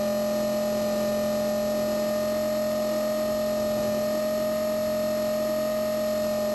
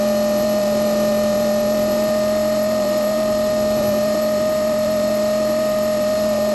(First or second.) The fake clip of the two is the second